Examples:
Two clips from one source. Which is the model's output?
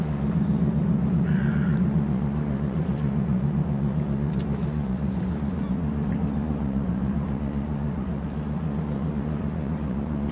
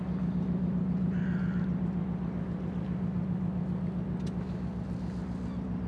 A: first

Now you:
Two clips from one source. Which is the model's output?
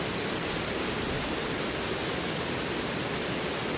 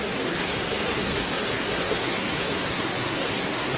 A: second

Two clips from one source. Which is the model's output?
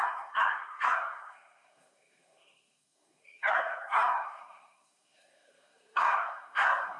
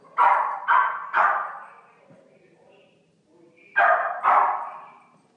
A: first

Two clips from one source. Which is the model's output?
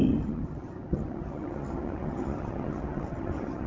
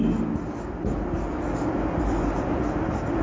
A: first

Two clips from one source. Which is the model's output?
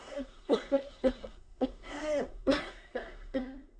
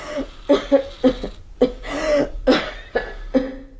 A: first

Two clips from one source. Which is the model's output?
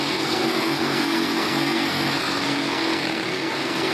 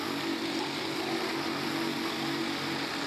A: first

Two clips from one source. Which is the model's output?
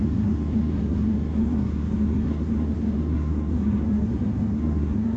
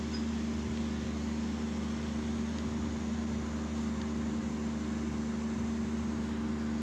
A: first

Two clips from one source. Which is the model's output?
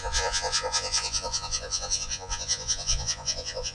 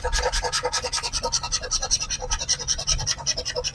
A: first